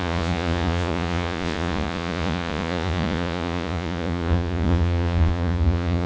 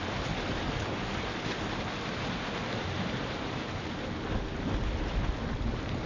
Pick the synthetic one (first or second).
first